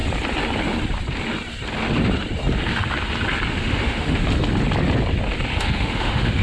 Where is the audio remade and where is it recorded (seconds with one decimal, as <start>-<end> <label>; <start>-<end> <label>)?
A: 0.0-3.5 recorded; 3.5-4.3 remade; 4.3-5.6 recorded; 5.6-6.4 remade